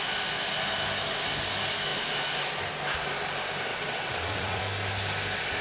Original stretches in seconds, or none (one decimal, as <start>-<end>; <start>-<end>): 0.0-3.7; 4.6-5.6